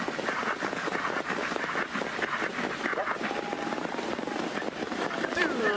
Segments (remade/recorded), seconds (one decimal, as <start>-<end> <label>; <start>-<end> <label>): 0.0-0.4 remade; 0.4-2.5 recorded; 2.5-2.9 remade; 2.9-4.1 recorded; 4.1-5.8 remade